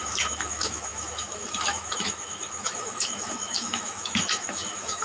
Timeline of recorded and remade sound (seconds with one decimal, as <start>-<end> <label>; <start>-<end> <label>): 0.0-5.0 remade